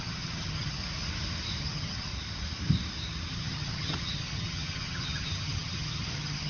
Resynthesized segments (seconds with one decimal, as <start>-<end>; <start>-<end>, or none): 0.0-0.8; 1.6-2.1; 3.3-6.5